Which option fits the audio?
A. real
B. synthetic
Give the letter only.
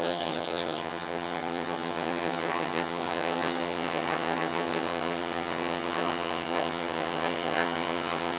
B